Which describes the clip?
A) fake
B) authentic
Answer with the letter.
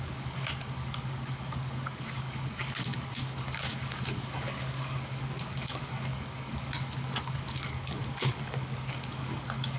A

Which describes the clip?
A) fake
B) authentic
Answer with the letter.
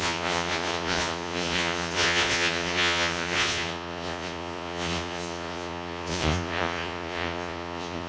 A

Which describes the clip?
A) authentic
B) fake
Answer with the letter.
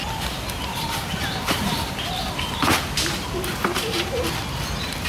A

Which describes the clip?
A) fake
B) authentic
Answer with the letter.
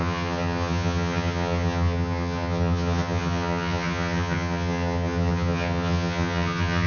A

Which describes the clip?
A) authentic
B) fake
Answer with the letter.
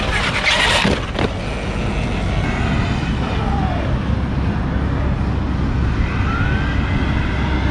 A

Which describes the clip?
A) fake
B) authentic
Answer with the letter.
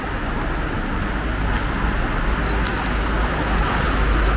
B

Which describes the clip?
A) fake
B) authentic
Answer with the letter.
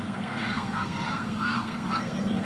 A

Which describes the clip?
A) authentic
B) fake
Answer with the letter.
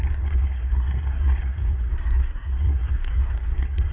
B